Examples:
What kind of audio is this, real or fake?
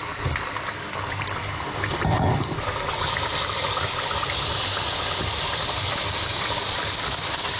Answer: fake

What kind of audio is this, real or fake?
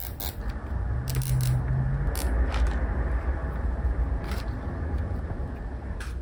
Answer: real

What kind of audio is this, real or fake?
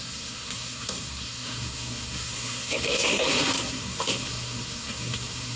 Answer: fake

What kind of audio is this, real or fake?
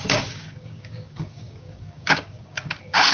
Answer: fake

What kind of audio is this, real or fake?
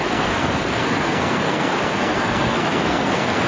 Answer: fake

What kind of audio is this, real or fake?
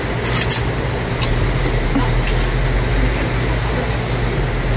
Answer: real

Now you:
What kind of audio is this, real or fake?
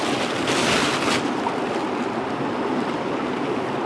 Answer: real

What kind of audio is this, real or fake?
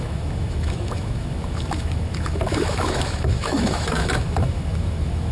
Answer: fake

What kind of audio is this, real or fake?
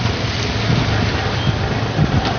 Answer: real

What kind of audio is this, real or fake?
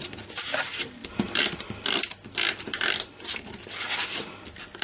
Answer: real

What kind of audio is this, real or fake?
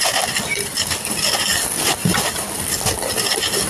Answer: real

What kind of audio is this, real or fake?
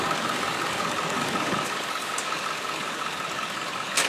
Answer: fake